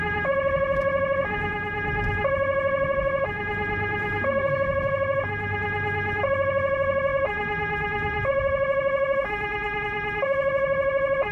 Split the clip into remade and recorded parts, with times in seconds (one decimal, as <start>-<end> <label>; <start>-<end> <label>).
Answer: 0.0-11.3 recorded

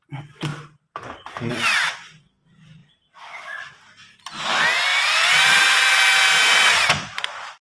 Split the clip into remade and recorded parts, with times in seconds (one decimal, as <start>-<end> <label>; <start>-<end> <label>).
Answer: 0.0-2.8 recorded; 2.8-3.7 remade; 3.7-4.9 recorded; 4.9-5.5 remade; 5.5-7.7 recorded